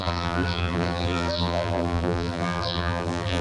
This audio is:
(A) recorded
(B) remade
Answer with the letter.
B